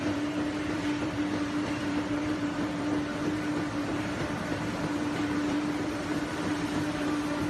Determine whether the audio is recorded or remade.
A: remade